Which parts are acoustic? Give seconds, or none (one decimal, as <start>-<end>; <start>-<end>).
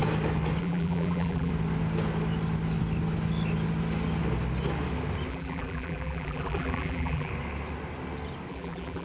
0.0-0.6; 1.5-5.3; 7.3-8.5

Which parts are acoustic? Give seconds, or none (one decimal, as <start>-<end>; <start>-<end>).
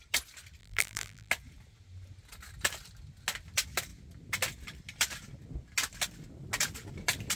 0.0-0.6; 1.3-7.4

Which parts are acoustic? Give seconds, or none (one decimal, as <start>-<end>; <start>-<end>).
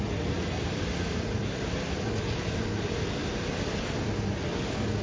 0.0-5.0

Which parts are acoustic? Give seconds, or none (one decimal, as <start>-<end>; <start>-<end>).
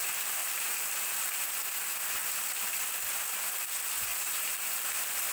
0.0-0.4; 1.6-4.1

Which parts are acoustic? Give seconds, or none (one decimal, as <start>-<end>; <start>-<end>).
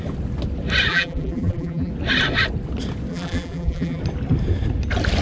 0.0-0.9; 1.9-3.1; 4.0-5.2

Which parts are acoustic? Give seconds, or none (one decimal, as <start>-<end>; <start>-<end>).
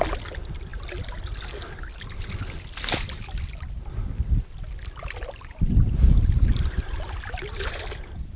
0.0-8.4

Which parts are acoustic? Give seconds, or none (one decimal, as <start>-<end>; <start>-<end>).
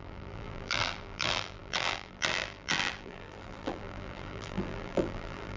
none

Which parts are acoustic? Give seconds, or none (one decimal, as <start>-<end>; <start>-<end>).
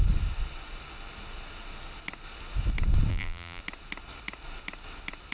0.0-3.1; 3.6-5.3